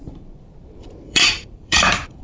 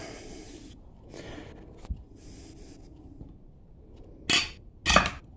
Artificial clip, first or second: first